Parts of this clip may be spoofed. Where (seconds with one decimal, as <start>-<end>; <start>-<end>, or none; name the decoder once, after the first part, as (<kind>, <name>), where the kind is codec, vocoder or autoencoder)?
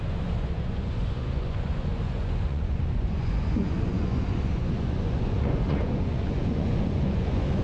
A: 0.0-7.6 (vocoder, Vocos)